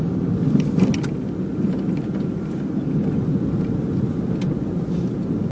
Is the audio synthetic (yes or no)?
no